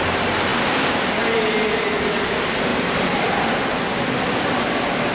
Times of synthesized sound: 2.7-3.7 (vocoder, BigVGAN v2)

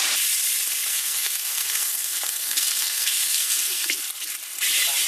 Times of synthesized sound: 0.9-4.0 (codec, SNAC)

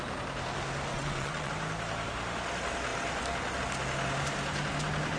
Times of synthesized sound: 0.9-1.5 (vocoder, WaveNeXt)